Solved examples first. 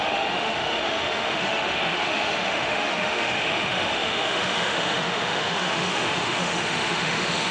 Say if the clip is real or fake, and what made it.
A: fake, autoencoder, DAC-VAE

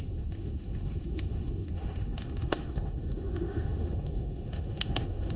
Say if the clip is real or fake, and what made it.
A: fake, autoencoder, DAC-VAE